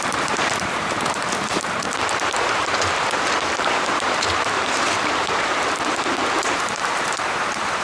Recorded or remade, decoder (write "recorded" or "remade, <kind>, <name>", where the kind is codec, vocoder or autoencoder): remade, vocoder, BigVGAN v2